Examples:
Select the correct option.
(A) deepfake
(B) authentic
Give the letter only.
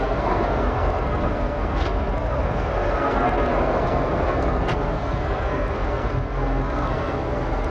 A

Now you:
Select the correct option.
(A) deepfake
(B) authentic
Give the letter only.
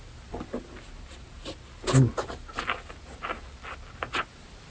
B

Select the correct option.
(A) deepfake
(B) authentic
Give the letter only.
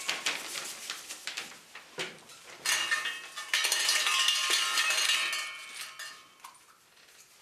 B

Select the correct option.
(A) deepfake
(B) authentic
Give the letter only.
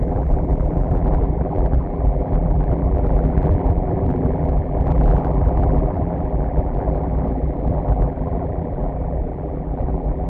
A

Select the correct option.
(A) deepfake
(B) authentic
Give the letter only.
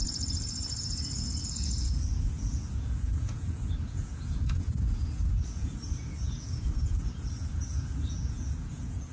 A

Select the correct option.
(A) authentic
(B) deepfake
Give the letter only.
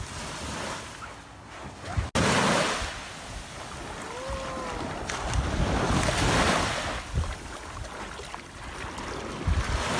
A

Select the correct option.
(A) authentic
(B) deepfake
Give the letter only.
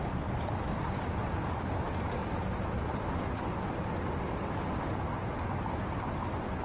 A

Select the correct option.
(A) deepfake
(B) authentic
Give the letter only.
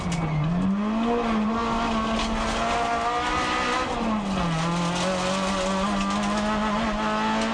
B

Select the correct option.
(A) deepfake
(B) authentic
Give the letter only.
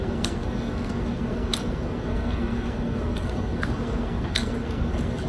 A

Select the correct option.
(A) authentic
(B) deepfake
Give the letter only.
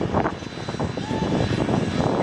A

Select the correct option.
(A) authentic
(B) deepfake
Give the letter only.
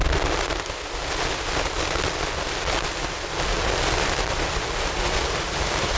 A